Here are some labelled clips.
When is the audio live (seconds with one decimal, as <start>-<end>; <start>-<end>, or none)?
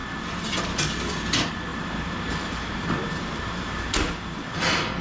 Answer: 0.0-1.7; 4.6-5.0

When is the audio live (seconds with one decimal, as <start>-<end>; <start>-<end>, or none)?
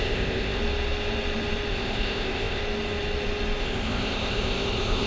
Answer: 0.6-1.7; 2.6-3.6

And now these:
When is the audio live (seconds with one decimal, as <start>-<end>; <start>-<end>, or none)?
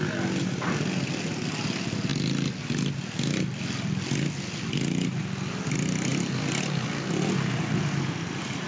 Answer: 0.0-8.7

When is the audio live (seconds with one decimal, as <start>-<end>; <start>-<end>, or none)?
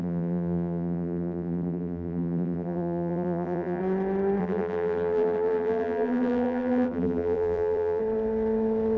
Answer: 3.8-4.4; 8.0-9.0